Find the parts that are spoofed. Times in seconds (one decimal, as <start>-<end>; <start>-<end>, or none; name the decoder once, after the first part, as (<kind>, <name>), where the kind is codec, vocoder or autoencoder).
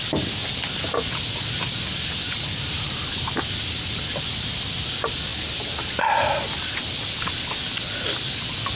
none